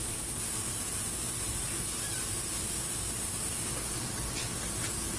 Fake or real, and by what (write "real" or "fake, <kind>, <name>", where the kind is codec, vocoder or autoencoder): real